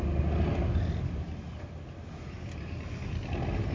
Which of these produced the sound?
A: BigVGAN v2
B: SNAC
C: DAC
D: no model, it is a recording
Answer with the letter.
D